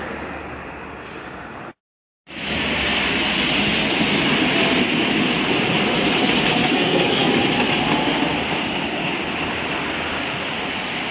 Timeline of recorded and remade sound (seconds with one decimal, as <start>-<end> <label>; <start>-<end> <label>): 0.0-6.7 recorded; 6.7-7.3 remade; 7.3-11.1 recorded

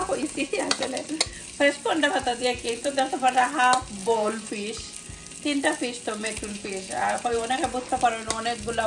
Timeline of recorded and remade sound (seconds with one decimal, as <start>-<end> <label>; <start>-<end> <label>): 0.0-0.6 remade; 0.6-2.1 recorded; 2.1-3.4 remade; 3.4-4.0 recorded; 4.0-4.5 remade; 4.5-6.2 recorded; 6.2-7.5 remade; 7.5-8.9 recorded

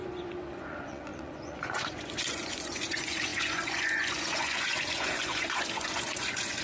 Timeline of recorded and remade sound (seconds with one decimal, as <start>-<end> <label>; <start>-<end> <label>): 0.0-6.6 remade